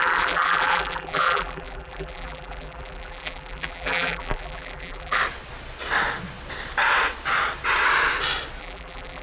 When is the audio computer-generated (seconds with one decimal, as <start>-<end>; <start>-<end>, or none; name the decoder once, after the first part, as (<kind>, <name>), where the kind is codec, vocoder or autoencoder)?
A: 0.0-5.2 (vocoder, BigVGAN v2); 8.6-9.2